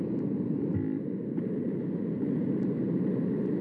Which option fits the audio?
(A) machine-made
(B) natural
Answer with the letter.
A